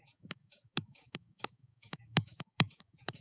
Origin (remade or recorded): remade